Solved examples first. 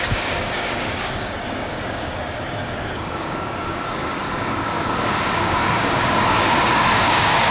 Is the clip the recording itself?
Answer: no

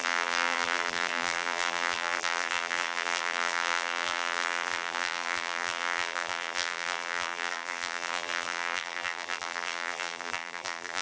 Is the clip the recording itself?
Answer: no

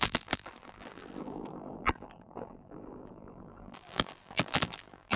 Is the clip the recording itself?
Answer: no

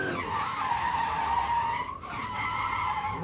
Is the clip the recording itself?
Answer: yes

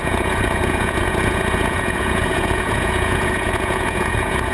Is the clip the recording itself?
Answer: no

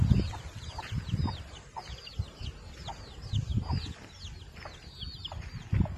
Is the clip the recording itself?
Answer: yes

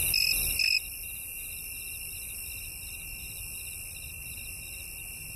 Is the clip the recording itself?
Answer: yes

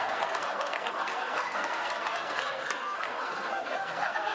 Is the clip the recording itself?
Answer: no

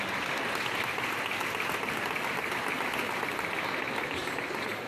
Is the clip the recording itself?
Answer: yes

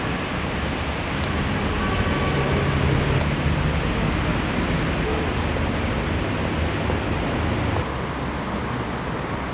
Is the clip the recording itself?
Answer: yes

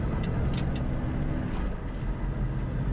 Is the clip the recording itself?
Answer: yes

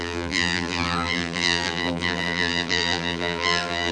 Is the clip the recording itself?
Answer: no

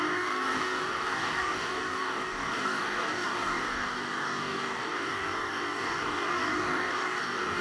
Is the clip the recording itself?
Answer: no